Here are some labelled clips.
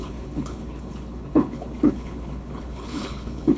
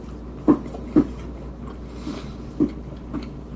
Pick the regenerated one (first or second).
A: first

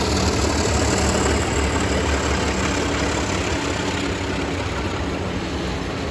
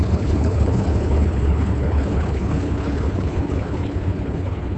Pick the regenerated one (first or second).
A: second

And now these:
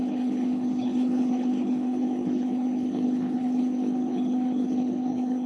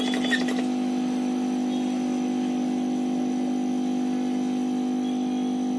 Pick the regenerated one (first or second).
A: first